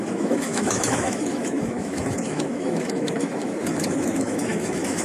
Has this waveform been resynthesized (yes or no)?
yes